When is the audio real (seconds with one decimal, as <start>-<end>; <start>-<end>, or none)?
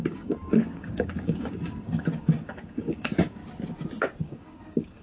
3.4-4.2